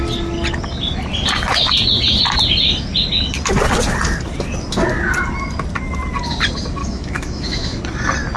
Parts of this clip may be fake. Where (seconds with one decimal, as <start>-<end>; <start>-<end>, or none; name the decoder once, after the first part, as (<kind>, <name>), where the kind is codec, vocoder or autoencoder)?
6.8-7.8 (autoencoder, DAC-VAE)